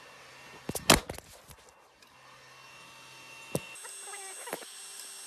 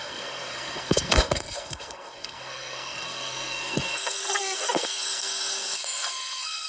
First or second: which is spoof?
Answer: second